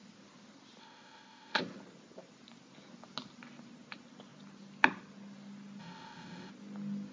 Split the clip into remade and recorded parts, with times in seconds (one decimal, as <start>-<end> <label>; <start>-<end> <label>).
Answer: 0.0-0.8 recorded; 0.8-1.6 remade; 1.6-5.8 recorded; 5.8-6.5 remade; 6.5-7.1 recorded